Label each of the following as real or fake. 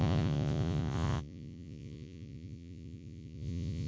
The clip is fake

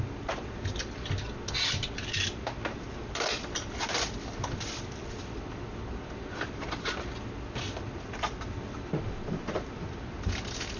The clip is real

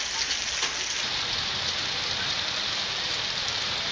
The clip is real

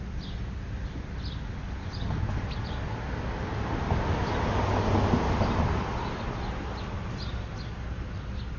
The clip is real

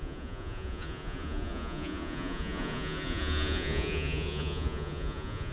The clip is fake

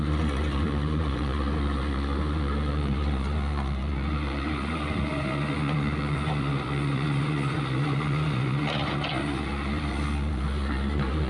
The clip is fake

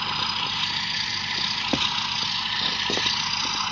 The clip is real